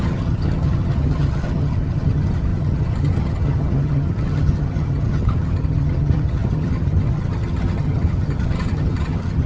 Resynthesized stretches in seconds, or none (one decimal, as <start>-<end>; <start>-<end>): 0.0-9.5